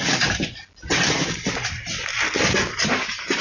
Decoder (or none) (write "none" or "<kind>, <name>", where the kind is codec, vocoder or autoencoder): none